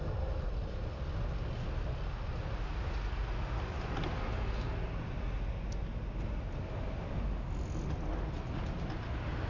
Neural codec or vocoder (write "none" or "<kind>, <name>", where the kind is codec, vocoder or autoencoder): none